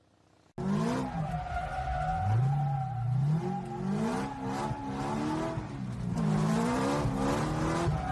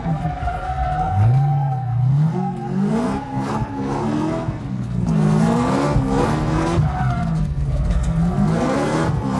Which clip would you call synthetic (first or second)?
second